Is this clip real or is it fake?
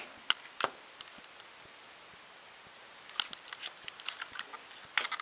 real